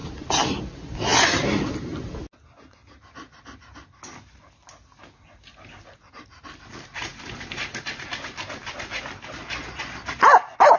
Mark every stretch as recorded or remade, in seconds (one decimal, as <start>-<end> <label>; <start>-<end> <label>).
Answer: 0.0-10.8 recorded